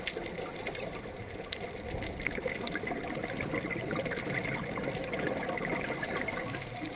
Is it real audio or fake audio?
real